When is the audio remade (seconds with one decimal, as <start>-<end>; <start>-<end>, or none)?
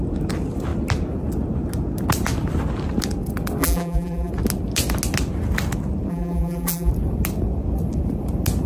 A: 3.6-4.3; 6.1-6.9